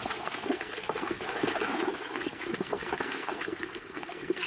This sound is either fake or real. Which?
fake